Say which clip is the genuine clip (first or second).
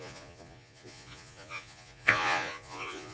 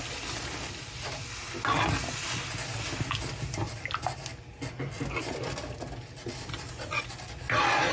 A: second